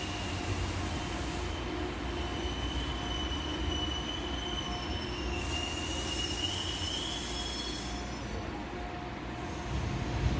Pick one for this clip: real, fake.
real